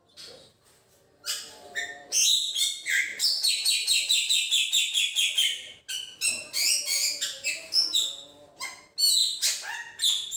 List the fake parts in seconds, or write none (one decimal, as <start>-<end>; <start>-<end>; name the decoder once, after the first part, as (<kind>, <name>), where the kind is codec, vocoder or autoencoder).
none